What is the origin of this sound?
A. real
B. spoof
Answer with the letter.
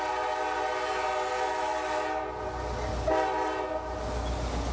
A